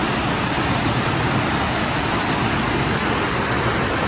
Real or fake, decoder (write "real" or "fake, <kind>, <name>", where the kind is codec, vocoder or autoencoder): real